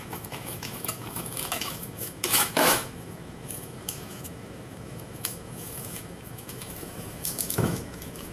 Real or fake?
fake